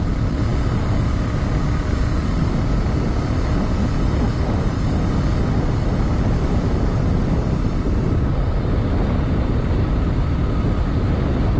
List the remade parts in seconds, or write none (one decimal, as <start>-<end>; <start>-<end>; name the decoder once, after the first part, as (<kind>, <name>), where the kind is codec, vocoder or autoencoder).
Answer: none